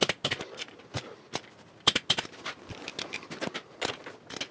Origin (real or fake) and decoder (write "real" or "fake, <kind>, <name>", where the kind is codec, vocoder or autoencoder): real